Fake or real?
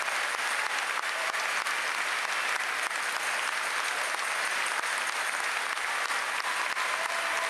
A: real